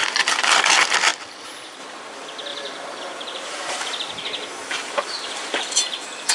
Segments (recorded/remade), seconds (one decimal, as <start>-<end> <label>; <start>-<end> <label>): 0.0-0.5 remade; 0.5-2.5 recorded; 2.5-6.3 remade

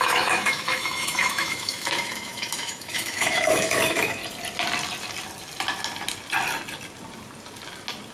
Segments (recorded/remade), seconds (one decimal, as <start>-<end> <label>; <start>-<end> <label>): 0.0-4.2 remade; 4.2-8.1 recorded

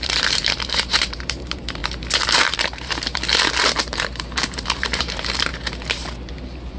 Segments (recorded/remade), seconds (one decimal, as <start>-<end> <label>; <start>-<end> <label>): 0.0-1.8 remade; 1.8-2.4 recorded; 2.4-3.3 remade; 3.3-3.9 recorded; 3.9-5.5 remade; 5.5-6.3 recorded; 6.3-6.8 remade

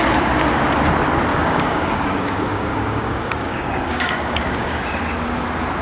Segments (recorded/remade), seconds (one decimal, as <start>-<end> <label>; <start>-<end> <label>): 0.0-1.3 recorded; 1.3-4.8 remade; 4.8-5.8 recorded

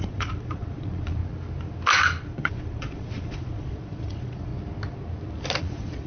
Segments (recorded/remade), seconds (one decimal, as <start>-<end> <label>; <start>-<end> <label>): 0.0-1.2 remade; 1.2-2.2 recorded; 2.2-4.5 remade; 4.5-5.6 recorded; 5.6-6.1 remade

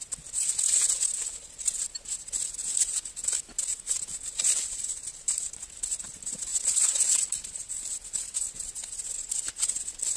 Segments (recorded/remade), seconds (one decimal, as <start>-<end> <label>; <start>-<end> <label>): 0.0-10.2 recorded